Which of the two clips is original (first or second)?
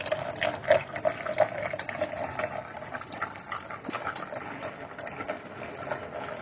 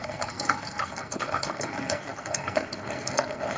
first